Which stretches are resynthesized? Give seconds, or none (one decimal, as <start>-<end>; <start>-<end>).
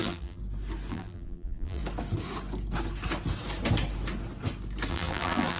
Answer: 0.0-0.4; 0.9-1.8; 4.9-5.6